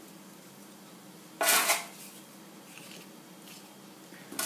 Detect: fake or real real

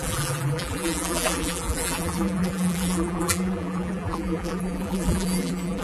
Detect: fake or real fake